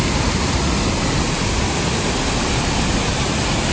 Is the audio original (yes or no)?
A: yes